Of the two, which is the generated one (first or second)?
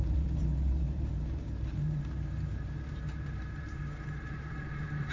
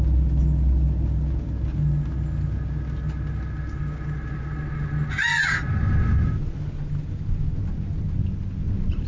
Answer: first